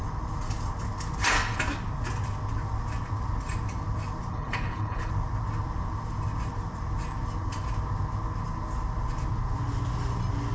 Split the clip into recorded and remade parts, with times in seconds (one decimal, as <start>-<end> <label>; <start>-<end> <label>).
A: 0.0-4.3 recorded; 4.3-5.1 remade; 5.1-10.5 recorded